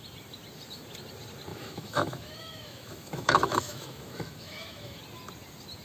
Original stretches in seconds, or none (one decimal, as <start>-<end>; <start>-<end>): 0.0-1.5; 5.0-5.8